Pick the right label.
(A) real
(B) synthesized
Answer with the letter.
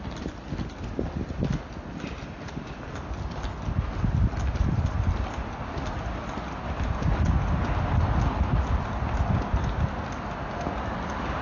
A